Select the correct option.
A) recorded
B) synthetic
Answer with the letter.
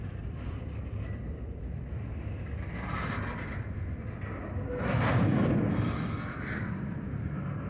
A